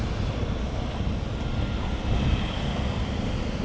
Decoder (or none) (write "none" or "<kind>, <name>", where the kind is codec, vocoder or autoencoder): vocoder, BigVGAN v2